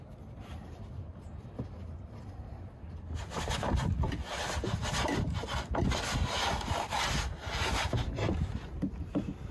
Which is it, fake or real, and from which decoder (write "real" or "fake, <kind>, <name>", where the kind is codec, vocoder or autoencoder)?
real